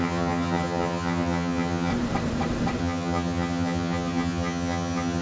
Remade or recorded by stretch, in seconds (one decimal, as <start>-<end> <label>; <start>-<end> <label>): 0.0-1.9 remade; 1.9-2.8 recorded; 2.8-5.2 remade